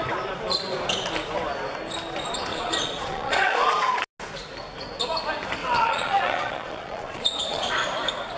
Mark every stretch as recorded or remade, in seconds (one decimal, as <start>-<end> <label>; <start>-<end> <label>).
0.0-2.5 recorded; 2.5-4.0 remade; 4.0-5.6 recorded; 5.6-7.7 remade; 7.7-8.4 recorded